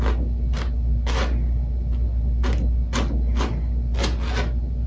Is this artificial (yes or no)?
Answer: no